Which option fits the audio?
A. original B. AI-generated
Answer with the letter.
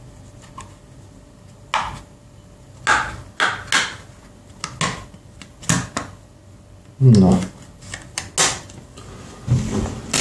A